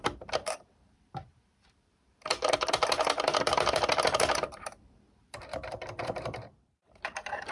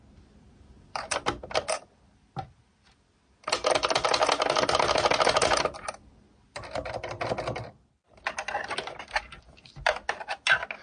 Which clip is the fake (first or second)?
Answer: first